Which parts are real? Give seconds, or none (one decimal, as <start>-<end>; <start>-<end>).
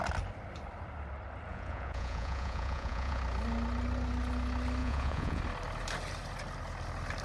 0.0-1.5; 3.2-4.8; 5.4-7.2